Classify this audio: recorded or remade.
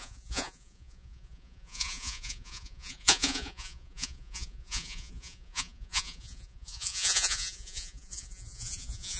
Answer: remade